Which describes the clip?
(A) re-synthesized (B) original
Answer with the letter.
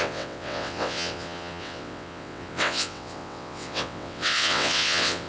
A